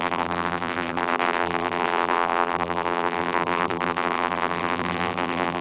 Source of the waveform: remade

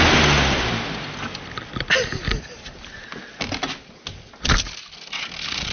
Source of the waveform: recorded